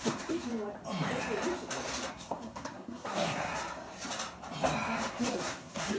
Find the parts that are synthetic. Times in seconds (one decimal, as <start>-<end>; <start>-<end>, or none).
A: 0.0-0.5; 2.1-3.5; 5.1-6.0